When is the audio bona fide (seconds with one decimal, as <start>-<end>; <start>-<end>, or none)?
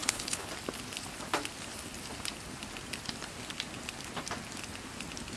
0.5-5.4